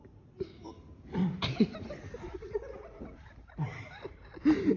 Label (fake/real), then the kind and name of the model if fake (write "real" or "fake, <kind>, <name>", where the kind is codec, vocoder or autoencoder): real